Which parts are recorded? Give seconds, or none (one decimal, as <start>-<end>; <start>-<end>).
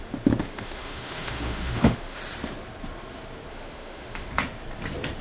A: 0.0-0.4; 2.2-3.5; 4.3-5.2